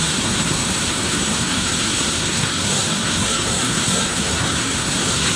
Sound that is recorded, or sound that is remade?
remade